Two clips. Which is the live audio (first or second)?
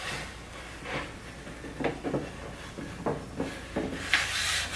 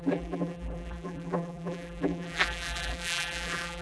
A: first